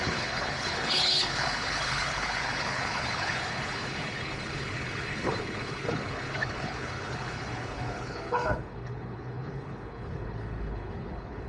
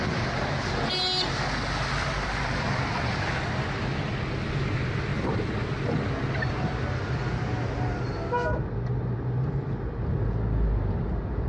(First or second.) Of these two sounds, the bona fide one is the second